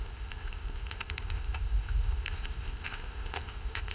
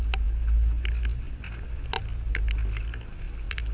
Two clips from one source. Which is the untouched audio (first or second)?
second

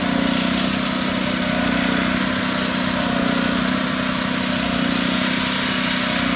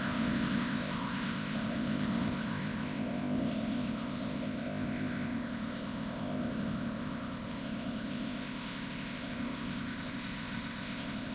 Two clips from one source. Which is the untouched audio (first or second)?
first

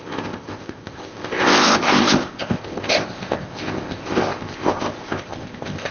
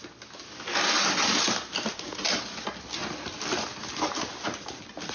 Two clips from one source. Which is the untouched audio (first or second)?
second